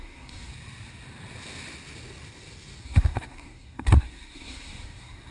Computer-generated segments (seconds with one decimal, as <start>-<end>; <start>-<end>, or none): 0.0-0.5; 2.8-5.3